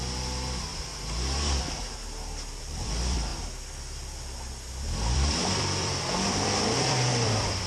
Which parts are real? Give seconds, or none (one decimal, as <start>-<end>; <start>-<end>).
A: 0.7-2.6; 3.3-5.0